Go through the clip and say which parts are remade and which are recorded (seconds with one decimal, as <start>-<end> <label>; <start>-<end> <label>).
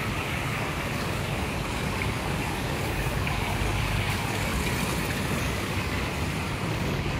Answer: 0.0-4.5 remade; 4.5-5.4 recorded; 5.4-6.1 remade; 6.1-6.7 recorded; 6.7-7.2 remade